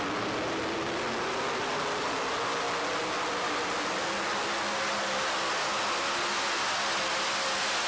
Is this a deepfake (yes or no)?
no